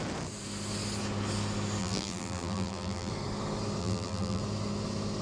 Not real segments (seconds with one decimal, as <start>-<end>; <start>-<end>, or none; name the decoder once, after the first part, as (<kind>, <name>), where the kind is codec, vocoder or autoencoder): 1.8-3.1 (vocoder, BigVGAN v2); 3.8-4.4